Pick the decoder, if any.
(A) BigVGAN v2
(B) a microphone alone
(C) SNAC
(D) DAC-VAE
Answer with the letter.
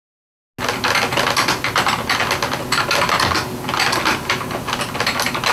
B